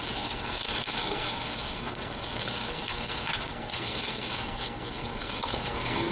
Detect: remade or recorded remade